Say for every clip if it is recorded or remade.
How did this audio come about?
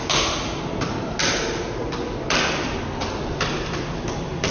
recorded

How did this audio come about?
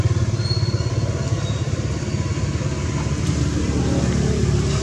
recorded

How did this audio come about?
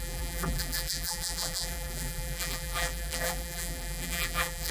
remade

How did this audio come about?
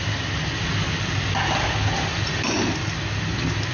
recorded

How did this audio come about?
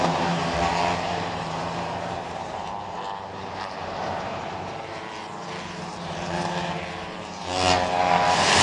remade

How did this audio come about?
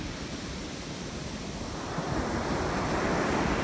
recorded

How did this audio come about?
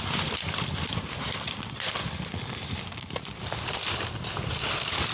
remade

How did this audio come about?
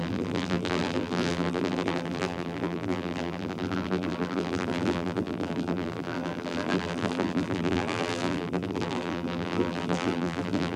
remade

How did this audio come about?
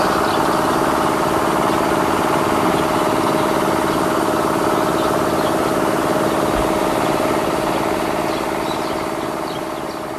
remade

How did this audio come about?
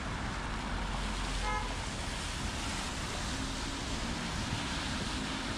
recorded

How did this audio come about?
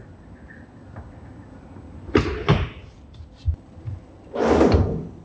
remade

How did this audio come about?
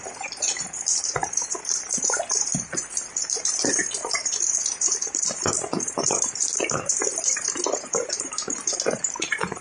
remade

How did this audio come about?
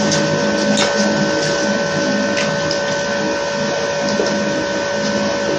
recorded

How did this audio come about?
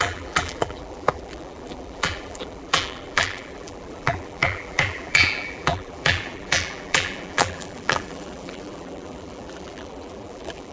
remade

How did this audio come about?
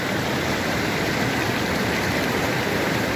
remade